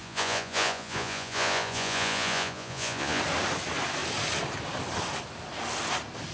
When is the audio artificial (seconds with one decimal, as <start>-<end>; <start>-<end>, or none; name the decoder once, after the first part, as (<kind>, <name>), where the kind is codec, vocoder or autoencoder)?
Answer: 0.0-3.2 (vocoder, Vocos)